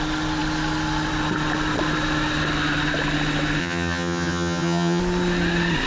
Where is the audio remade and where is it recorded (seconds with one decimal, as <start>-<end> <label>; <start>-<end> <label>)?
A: 0.0-3.6 recorded; 3.6-5.0 remade; 5.0-5.9 recorded